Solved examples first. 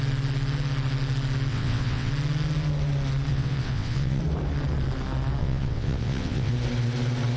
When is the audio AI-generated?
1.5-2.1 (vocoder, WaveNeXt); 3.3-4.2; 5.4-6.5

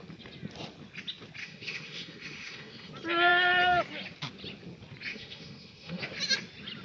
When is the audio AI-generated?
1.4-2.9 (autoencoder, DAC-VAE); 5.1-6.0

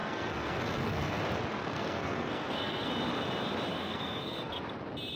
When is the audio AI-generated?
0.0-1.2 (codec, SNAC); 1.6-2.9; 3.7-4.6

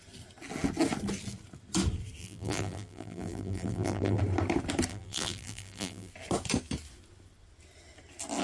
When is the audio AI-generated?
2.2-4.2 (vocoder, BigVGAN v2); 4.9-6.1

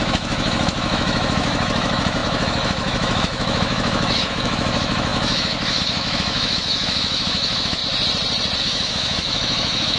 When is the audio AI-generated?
0.0-7.8 (autoencoder, DAC-VAE); 8.6-10.0